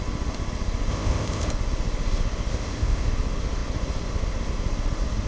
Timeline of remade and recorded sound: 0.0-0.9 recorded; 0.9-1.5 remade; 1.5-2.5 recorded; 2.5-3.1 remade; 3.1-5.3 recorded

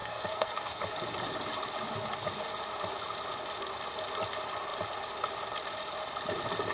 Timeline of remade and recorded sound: 0.0-0.8 remade; 0.8-6.7 recorded

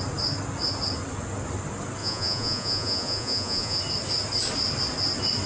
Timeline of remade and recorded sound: 0.0-2.0 recorded; 2.0-3.8 remade; 3.8-5.5 recorded